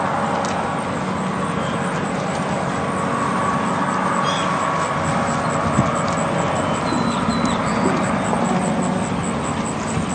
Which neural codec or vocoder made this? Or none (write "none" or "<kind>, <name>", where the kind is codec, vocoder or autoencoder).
none